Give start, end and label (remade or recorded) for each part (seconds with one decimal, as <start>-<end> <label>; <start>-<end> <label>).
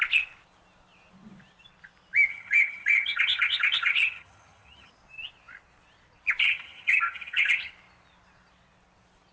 0.0-2.3 recorded; 2.3-4.9 remade; 4.9-6.4 recorded; 6.4-7.7 remade; 7.7-9.3 recorded